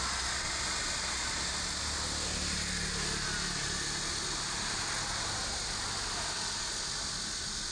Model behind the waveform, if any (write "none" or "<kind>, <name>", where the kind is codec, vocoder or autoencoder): none